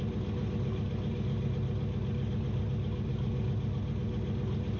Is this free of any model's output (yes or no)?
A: yes